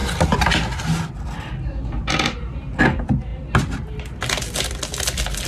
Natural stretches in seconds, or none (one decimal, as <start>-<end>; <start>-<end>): 0.0-5.5